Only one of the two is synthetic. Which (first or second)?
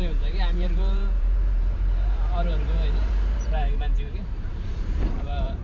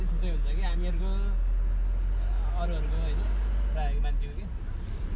first